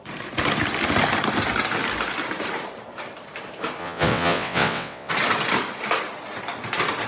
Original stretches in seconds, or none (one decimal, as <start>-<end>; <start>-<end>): 0.0-3.8; 5.1-7.1